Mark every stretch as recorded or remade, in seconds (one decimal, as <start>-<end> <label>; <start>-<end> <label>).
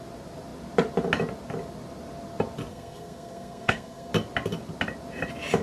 0.0-2.7 recorded; 2.7-4.1 remade; 4.1-5.6 recorded